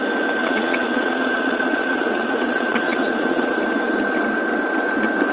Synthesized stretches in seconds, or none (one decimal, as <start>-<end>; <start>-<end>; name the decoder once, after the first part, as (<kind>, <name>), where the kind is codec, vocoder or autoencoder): 0.4-3.6 (vocoder, Vocos)